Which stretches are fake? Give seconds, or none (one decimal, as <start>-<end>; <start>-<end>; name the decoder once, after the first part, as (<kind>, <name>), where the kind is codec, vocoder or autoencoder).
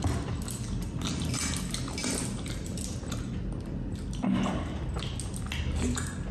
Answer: none